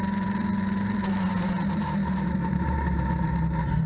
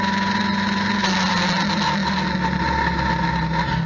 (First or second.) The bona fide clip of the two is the second